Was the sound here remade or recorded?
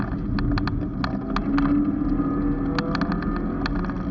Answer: recorded